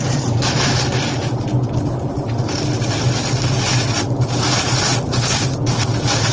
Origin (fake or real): real